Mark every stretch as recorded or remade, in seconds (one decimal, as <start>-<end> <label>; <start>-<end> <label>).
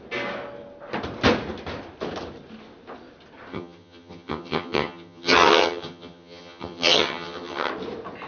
0.0-3.5 recorded; 3.5-7.7 remade; 7.7-8.3 recorded